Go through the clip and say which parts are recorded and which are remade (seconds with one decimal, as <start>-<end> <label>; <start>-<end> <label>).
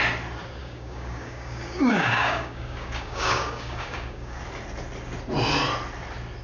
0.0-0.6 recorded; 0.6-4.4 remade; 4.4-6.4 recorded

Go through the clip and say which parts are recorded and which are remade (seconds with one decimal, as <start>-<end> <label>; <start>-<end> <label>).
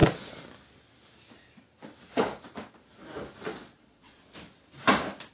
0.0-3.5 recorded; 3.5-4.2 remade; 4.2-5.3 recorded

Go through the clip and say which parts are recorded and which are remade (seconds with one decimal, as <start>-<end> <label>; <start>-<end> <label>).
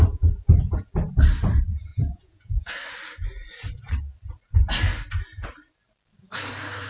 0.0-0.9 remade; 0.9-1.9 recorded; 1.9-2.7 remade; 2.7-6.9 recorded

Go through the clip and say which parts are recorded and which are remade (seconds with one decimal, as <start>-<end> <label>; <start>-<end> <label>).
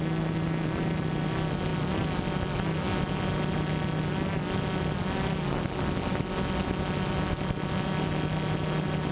0.0-9.1 recorded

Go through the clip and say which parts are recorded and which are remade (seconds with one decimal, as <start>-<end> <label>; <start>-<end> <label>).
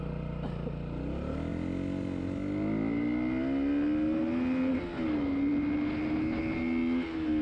0.0-7.4 recorded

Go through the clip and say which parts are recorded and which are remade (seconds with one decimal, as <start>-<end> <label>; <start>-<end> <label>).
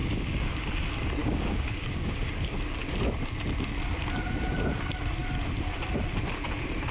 0.0-0.7 remade; 0.7-1.2 recorded; 1.2-2.3 remade; 2.3-6.9 recorded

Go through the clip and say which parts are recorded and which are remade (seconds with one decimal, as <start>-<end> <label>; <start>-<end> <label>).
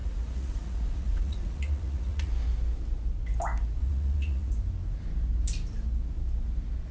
0.0-2.3 remade; 2.3-3.8 recorded; 3.8-4.5 remade; 4.5-6.9 recorded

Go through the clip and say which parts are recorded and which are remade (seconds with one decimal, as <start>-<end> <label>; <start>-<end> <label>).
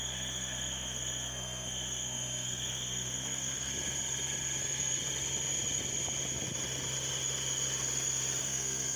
0.0-3.7 remade; 3.7-4.6 recorded; 4.6-5.0 remade; 5.0-8.4 recorded; 8.4-9.0 remade